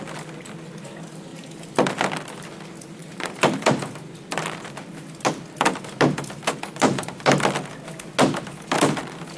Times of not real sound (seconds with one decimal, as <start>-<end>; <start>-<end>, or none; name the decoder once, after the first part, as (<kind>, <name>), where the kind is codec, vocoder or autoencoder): 1.3-1.9 (vocoder, BigVGAN v2); 3.0-3.7